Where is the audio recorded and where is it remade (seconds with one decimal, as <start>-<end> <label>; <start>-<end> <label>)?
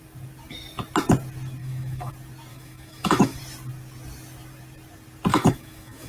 0.0-1.6 recorded; 1.6-2.1 remade; 2.1-2.5 recorded; 2.5-3.4 remade; 3.4-5.3 recorded; 5.3-6.1 remade